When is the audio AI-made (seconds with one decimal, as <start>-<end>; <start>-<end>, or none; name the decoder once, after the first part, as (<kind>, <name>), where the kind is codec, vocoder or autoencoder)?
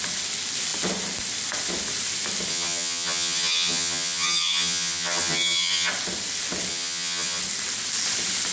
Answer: 2.5-5.9 (vocoder, HiFi-GAN); 6.7-7.4